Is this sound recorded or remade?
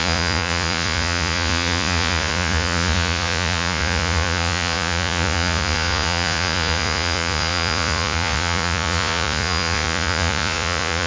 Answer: remade